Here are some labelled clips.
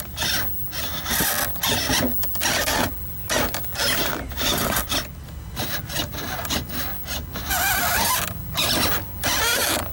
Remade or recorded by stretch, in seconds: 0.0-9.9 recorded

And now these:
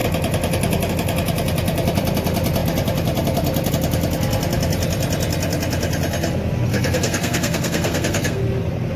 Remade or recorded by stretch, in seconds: 0.0-6.7 recorded; 6.7-8.4 remade; 8.4-9.0 recorded

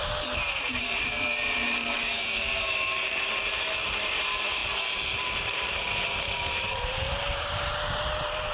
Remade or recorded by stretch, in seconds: 0.0-0.6 recorded; 0.6-4.6 remade; 4.6-5.1 recorded; 5.1-8.5 remade

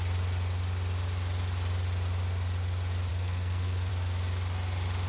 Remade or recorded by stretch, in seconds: 0.0-3.1 recorded; 3.1-3.9 remade; 3.9-5.1 recorded

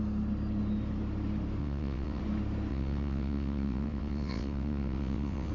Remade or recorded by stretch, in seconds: 0.0-1.6 recorded; 1.6-2.2 remade; 2.2-2.7 recorded; 2.7-5.5 remade

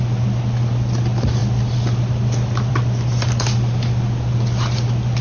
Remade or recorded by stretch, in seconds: 0.0-5.2 recorded

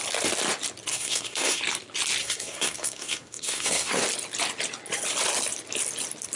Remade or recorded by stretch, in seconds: 0.0-0.9 recorded; 0.9-1.6 remade; 1.6-2.2 recorded; 2.2-4.0 remade; 4.0-6.4 recorded

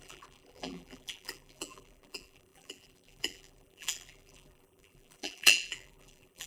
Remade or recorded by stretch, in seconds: 0.0-6.5 remade